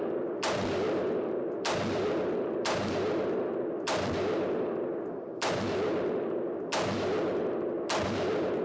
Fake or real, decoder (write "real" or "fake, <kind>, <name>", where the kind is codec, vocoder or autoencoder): fake, vocoder, BigVGAN v2